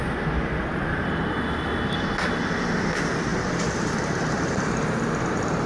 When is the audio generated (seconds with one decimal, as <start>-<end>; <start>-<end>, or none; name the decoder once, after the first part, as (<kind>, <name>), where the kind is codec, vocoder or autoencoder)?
3.3-5.0 (vocoder, BigVGAN v2)